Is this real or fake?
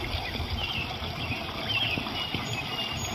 real